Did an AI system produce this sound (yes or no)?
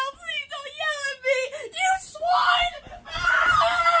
no